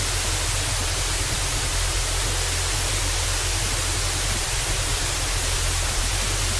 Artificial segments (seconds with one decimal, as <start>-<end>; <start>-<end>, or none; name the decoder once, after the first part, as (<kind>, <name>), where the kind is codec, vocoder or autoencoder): 0.8-2.2 (vocoder, BigVGAN v2); 4.4-6.1